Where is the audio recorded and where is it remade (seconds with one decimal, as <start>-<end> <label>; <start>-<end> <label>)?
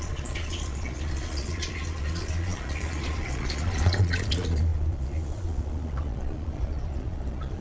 0.0-7.6 remade